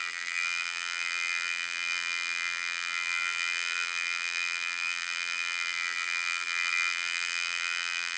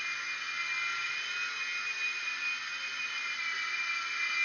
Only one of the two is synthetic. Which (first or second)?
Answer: first